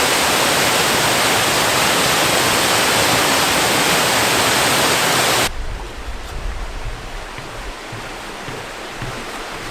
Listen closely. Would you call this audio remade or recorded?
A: recorded